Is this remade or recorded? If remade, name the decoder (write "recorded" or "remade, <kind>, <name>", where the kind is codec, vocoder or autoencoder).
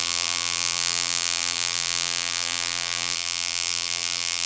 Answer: remade, vocoder, BigVGAN v2